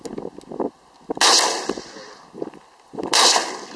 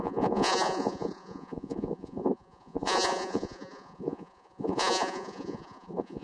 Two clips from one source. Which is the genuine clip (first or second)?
first